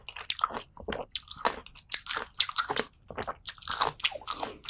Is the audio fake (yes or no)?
no